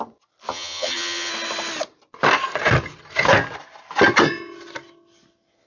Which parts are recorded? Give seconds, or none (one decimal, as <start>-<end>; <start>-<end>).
0.0-0.5; 1.3-5.7